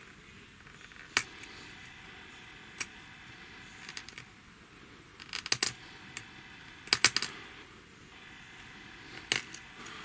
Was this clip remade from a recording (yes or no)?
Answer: no